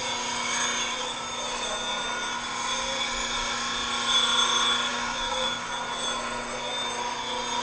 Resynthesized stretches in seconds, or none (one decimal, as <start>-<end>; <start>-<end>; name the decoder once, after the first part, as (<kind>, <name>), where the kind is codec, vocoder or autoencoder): 4.9-5.7 (codec, DAC)